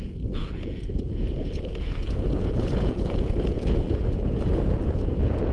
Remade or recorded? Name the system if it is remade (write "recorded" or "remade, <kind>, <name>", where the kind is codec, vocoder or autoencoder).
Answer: remade, vocoder, Vocos